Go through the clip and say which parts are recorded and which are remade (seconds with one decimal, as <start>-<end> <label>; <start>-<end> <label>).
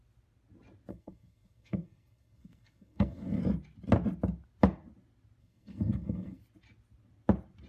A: 0.0-0.9 recorded; 0.9-3.4 remade; 3.4-5.4 recorded; 5.4-6.4 remade; 6.4-7.7 recorded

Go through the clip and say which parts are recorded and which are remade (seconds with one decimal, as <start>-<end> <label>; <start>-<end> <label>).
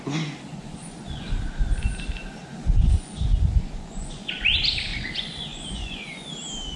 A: 0.0-0.5 recorded; 0.5-1.4 remade; 1.4-2.4 recorded; 2.4-4.3 remade; 4.3-4.9 recorded; 4.9-6.3 remade; 6.3-6.8 recorded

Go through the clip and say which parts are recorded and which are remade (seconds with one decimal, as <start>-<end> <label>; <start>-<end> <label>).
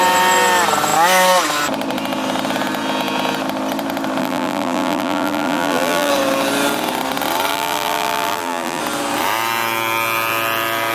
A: 0.0-4.2 recorded; 4.2-6.1 remade; 6.1-7.5 recorded; 7.5-8.8 remade; 8.8-10.9 recorded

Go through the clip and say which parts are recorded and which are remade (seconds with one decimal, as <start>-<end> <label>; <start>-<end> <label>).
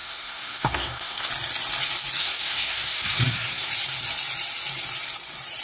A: 0.0-1.3 remade; 1.3-2.2 recorded; 2.2-3.7 remade; 3.7-5.6 recorded